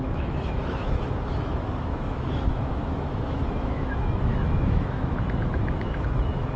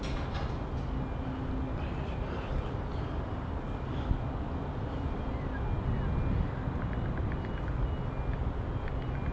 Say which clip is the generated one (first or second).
first